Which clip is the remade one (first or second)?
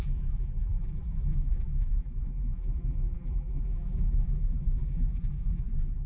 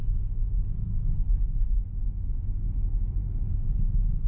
first